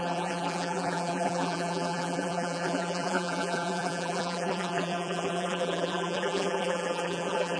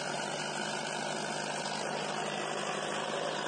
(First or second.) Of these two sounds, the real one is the second